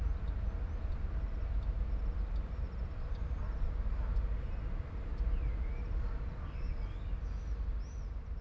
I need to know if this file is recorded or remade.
recorded